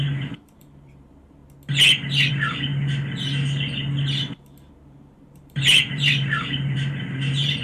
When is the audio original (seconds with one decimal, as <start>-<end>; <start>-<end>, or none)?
1.4-2.3; 2.7-4.7